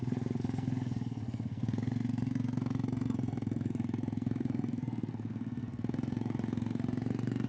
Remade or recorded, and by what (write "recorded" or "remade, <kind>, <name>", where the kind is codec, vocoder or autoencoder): remade, codec, SNAC